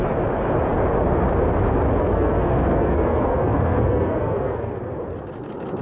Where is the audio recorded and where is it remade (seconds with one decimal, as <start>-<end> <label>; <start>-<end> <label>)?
0.0-2.0 recorded; 2.0-4.8 remade; 4.8-5.8 recorded